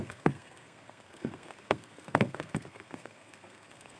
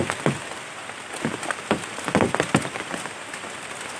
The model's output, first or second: first